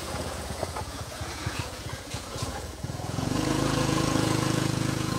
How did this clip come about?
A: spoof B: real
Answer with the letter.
A